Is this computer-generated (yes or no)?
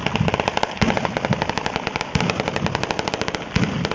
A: no